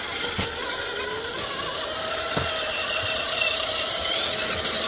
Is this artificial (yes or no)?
no